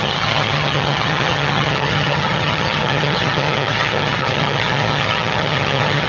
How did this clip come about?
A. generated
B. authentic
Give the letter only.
A